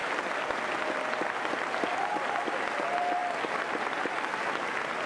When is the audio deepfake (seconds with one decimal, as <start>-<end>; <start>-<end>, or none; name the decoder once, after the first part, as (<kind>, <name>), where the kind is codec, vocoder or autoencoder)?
none